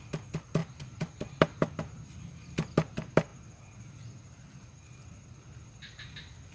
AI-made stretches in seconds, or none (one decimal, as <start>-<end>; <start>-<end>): 0.6-1.8